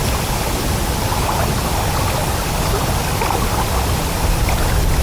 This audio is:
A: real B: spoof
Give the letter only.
A